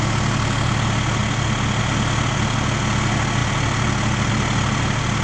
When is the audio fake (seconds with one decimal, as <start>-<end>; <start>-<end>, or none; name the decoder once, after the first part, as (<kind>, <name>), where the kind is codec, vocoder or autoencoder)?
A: 3.4-4.3 (vocoder, BigVGAN v2)